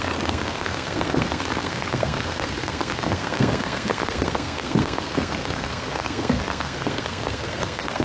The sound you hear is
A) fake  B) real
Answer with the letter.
A